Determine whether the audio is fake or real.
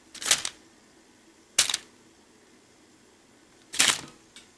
real